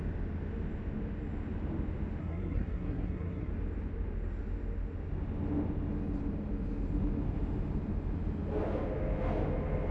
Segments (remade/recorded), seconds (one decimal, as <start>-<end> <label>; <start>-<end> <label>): 0.0-2.2 recorded; 2.2-3.5 remade; 3.5-9.9 recorded